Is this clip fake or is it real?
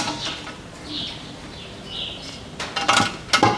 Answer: real